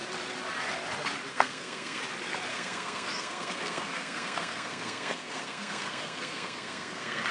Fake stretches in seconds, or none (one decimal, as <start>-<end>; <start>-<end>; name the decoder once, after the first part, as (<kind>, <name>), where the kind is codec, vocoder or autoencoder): 1.3-2.0 (codec, SNAC); 2.5-7.3